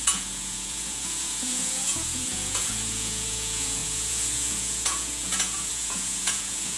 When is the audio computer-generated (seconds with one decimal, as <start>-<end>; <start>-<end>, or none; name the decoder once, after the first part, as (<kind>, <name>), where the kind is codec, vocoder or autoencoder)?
0.0-6.8 (vocoder, Vocos)